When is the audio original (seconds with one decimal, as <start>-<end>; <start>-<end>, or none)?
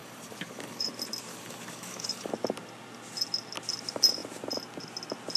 0.9-1.3; 2.3-5.4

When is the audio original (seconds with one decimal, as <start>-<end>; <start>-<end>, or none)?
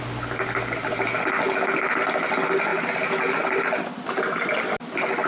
0.0-5.3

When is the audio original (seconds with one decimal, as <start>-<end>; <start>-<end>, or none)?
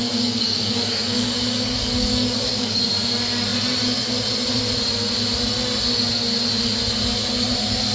2.8-7.9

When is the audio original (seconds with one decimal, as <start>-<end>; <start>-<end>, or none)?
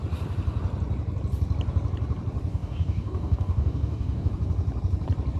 0.0-2.5; 4.3-5.4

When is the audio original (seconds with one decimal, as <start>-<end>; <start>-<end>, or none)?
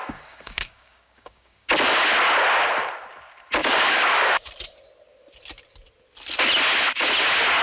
1.7-3.6; 4.5-7.6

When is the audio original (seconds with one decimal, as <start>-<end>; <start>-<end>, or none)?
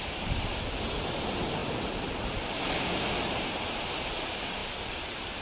0.0-5.4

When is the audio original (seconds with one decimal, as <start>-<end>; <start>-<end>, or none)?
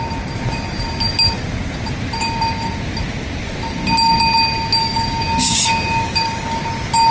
0.0-4.8; 6.6-7.1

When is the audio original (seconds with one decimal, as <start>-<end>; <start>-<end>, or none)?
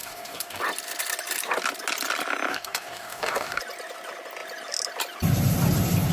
0.6-2.5; 3.6-6.1